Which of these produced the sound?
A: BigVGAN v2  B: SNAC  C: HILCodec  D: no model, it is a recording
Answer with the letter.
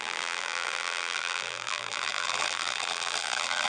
A